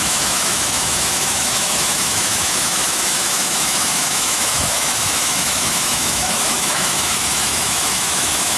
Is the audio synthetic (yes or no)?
yes